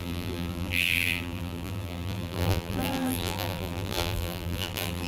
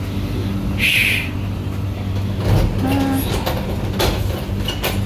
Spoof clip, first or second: first